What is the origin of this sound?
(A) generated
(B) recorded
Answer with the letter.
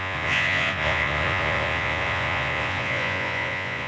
A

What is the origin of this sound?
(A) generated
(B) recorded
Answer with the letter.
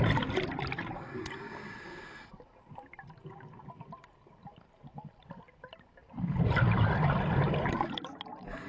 B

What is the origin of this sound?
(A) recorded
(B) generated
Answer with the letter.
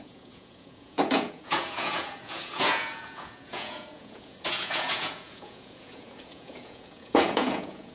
B